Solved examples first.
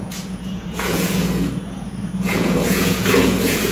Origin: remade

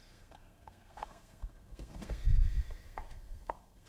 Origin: remade